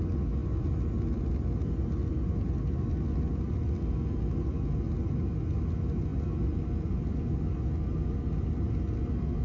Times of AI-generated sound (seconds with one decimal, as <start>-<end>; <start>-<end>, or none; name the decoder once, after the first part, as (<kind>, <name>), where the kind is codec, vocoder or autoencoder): none